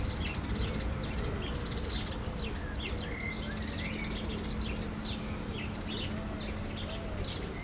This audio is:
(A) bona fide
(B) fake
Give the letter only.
A